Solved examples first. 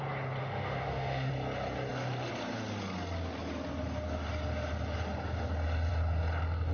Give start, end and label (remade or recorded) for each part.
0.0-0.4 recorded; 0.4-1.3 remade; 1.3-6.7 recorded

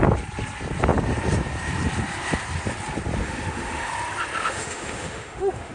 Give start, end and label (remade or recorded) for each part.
0.0-3.2 recorded; 3.2-3.9 remade; 3.9-4.4 recorded; 4.4-5.7 remade

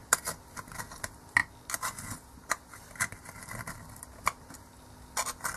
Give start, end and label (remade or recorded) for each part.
0.0-5.6 recorded

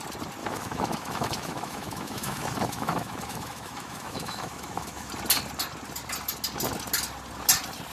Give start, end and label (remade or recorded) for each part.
0.0-0.4 recorded; 0.4-5.1 remade; 5.1-7.9 recorded

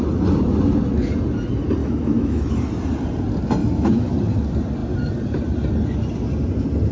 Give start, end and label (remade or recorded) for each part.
0.0-1.8 recorded; 1.8-2.7 remade; 2.7-3.6 recorded; 3.6-4.1 remade; 4.1-6.9 recorded